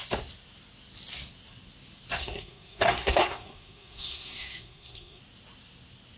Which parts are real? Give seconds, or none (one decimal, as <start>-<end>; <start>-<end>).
0.0-2.2; 5.2-6.2